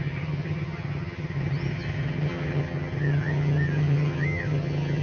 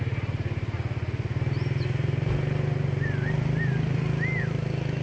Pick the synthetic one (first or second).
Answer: first